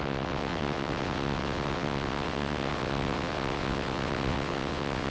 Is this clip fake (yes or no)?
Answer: yes